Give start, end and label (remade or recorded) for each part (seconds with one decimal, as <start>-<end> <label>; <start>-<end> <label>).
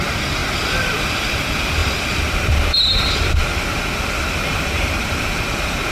0.0-5.9 remade